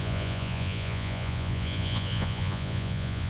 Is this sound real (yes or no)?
no